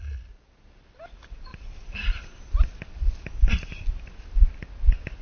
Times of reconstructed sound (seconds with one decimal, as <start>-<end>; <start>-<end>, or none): 1.5-2.2